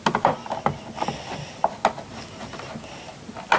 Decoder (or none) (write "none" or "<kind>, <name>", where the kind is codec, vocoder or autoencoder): none